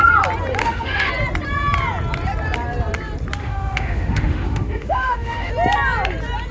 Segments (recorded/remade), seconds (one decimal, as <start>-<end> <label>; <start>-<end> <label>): 0.0-0.6 recorded; 0.6-1.1 remade; 1.1-3.4 recorded; 3.4-5.5 remade; 5.5-6.5 recorded